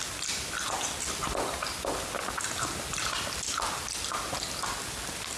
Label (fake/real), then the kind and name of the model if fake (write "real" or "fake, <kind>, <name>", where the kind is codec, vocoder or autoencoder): real